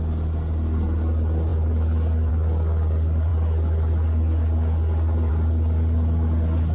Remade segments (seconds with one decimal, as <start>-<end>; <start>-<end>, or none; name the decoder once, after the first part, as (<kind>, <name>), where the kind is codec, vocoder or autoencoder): none